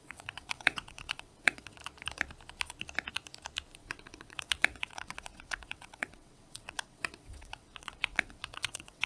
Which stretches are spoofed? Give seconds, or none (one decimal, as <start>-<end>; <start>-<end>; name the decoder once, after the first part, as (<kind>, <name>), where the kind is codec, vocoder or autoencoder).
0.0-1.8 (vocoder, WaveNeXt); 3.8-9.1